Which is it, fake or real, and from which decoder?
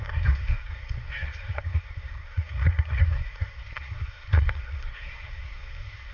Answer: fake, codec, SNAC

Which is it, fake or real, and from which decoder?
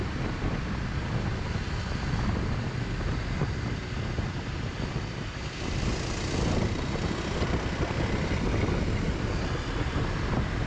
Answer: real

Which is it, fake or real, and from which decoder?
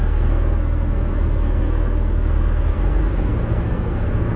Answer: fake, codec, SNAC